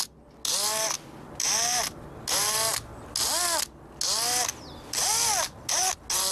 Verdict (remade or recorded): recorded